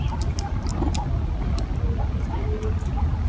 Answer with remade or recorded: recorded